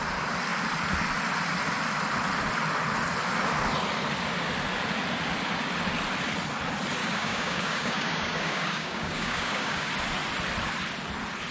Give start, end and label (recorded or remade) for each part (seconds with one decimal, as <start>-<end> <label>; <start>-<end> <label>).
0.0-7.0 recorded; 7.0-9.9 remade; 9.9-11.5 recorded